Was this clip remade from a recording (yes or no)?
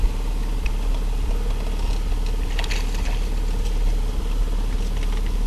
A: no